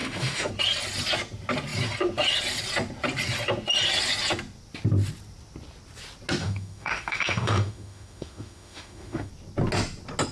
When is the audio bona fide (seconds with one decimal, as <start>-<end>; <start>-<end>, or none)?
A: 0.5-6.4; 9.3-10.3